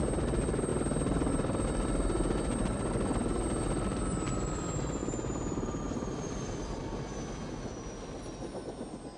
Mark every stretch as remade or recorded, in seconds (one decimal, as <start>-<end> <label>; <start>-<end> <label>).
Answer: 0.0-5.0 recorded; 5.0-6.8 remade; 6.8-9.2 recorded